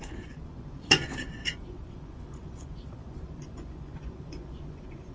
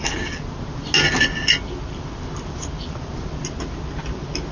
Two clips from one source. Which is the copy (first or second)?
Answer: first